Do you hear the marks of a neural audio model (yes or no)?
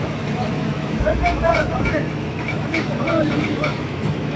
yes